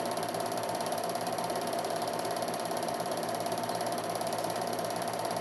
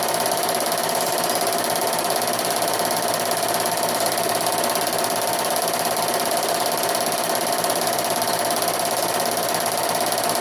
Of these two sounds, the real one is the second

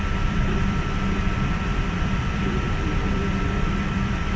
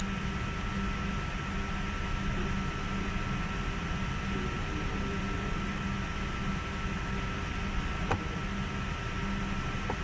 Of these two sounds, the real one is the second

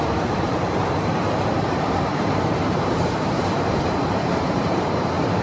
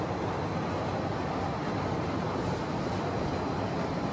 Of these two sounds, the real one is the second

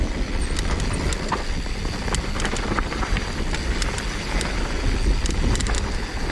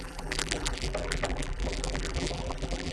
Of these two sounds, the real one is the first